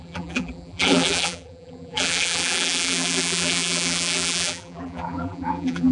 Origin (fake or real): fake